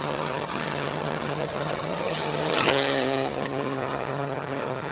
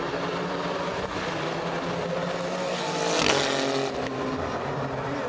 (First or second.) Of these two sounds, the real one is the second